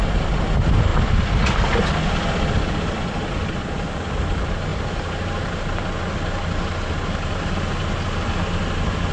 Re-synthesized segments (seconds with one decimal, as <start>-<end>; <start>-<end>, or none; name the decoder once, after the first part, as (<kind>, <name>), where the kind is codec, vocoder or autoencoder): none